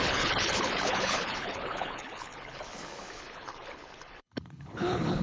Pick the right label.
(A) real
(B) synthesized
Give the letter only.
B